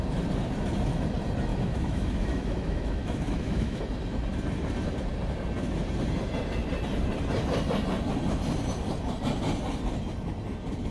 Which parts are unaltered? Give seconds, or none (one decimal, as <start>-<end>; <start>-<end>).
0.0-1.5; 3.8-10.9